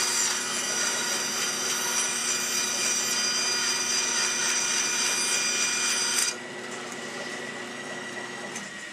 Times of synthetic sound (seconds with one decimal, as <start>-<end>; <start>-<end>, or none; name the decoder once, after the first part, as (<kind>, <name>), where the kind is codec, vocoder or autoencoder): 7.7-8.5 (autoencoder, DAC-VAE)